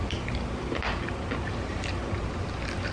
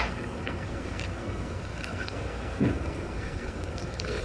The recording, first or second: first